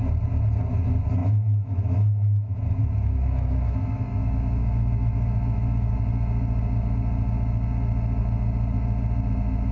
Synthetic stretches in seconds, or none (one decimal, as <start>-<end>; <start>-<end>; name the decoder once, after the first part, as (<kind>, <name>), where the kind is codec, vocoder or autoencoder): 1.2-5.9 (autoencoder, DAC-VAE)